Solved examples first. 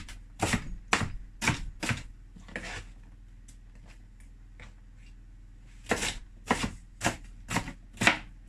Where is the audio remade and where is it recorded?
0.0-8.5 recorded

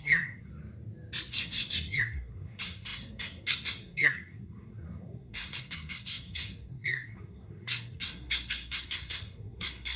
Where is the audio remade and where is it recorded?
0.0-0.5 remade; 0.5-1.3 recorded; 1.3-10.0 remade

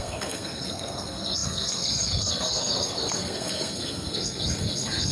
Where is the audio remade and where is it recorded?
0.0-5.1 remade

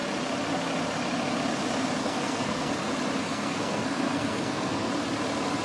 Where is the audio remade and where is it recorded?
0.0-2.0 recorded; 2.0-2.7 remade; 2.7-3.2 recorded; 3.2-4.9 remade; 4.9-5.6 recorded

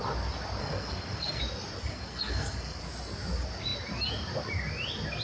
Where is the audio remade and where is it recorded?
0.0-0.6 recorded; 0.6-1.4 remade; 1.4-1.9 recorded; 1.9-2.8 remade; 2.8-5.2 recorded